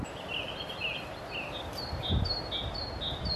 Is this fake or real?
real